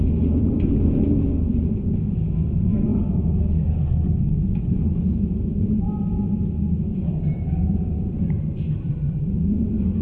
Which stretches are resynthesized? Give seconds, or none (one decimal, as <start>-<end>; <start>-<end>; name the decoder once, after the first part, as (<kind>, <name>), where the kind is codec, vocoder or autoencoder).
7.1-9.3 (vocoder, BigVGAN v2)